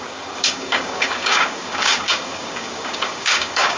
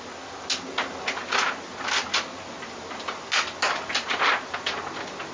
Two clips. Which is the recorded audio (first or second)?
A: second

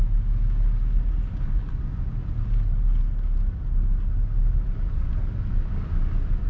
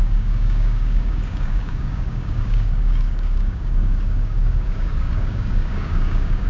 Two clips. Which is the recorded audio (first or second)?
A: first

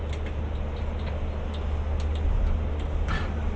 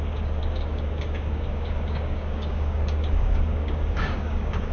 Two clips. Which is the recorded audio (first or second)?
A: first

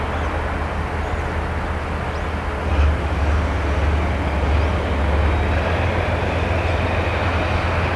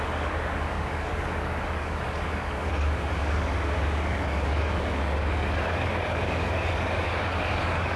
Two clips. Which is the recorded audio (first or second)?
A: first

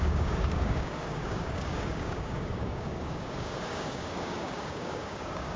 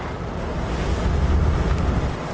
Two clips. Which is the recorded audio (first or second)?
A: second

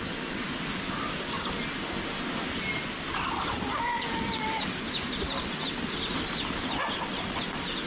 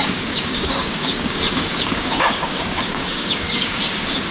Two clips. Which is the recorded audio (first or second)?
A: first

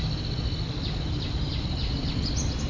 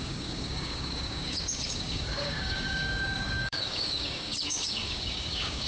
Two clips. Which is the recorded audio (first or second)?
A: first